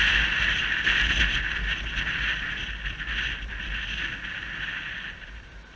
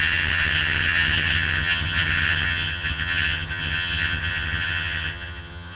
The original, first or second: first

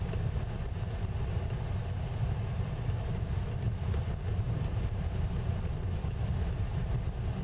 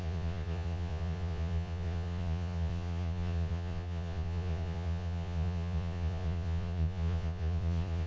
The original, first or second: first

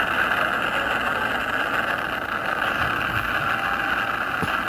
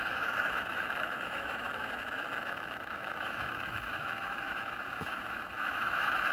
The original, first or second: first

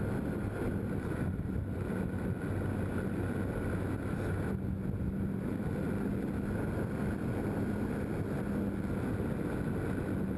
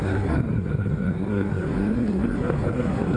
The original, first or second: first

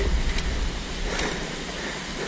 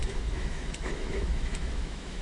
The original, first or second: first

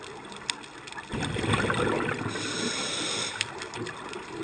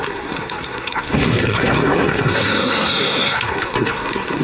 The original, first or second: first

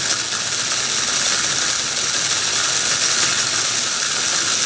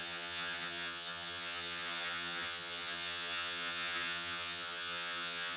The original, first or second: first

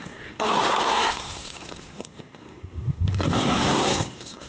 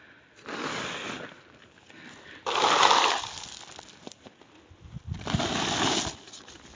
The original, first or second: second